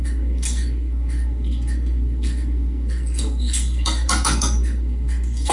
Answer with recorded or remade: remade